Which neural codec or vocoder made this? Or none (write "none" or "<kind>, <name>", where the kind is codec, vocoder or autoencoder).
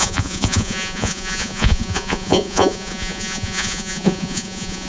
vocoder, Vocos